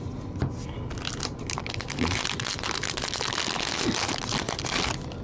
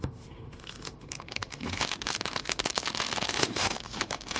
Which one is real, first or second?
first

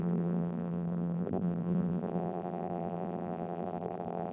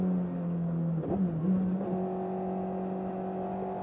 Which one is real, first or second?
second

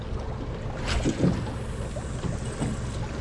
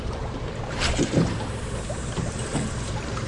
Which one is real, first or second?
first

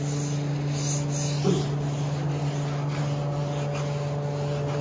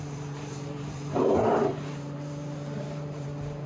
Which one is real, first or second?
first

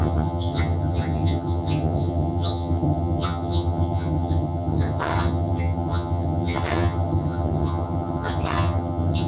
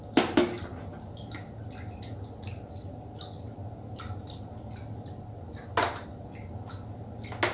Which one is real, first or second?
second